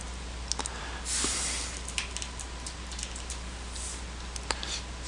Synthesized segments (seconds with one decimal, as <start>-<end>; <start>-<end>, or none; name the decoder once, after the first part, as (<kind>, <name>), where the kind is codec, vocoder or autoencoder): none